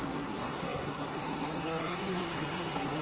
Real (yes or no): no